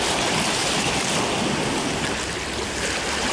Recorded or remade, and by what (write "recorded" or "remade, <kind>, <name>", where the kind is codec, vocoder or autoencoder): recorded